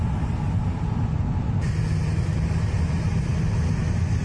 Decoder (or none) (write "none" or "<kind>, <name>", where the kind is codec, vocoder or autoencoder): none